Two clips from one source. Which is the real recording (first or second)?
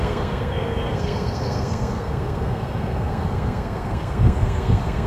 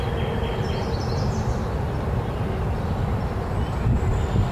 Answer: second